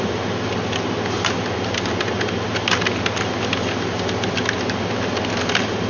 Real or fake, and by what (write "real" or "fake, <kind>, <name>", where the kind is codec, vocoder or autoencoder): real